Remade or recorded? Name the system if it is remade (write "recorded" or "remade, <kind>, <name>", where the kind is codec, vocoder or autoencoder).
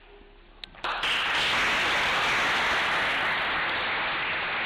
recorded